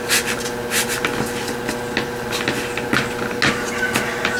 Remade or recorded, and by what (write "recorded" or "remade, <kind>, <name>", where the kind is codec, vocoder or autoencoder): recorded